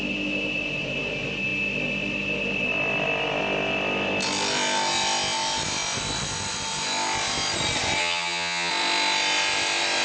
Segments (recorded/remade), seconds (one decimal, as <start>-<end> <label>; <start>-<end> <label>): 0.0-8.0 recorded; 8.0-8.7 remade; 8.7-10.0 recorded